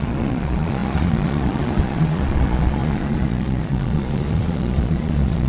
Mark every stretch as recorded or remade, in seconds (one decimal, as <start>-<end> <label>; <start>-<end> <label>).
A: 0.0-5.5 remade